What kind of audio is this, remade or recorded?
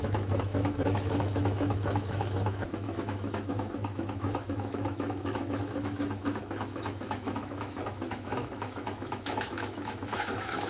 remade